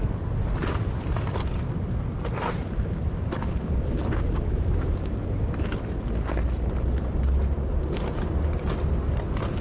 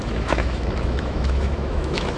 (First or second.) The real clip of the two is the first